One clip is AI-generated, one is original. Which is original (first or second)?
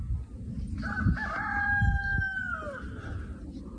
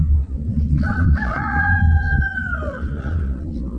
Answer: first